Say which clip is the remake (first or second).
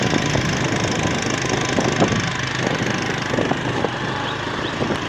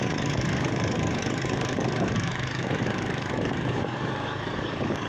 second